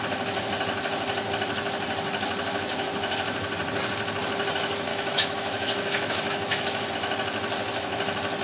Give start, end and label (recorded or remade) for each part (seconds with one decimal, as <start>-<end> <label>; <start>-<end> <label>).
0.0-4.9 recorded; 4.9-6.9 remade; 6.9-8.4 recorded